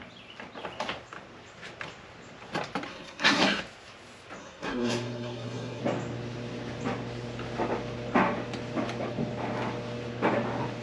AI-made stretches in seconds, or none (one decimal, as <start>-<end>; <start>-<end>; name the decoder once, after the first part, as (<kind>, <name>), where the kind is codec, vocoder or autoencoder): 2.9-3.6 (codec, SNAC); 4.4-5.8